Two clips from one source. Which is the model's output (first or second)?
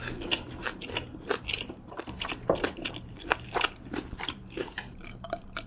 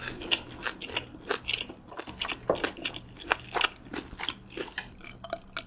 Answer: first